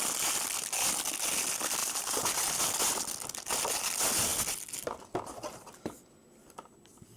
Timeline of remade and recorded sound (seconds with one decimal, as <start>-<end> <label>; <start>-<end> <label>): 0.0-1.8 recorded; 1.8-2.6 remade; 2.6-7.2 recorded